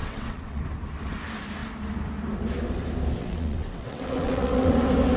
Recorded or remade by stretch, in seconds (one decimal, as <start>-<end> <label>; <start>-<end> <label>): 0.0-0.6 remade; 0.6-3.2 recorded; 3.2-4.7 remade; 4.7-5.2 recorded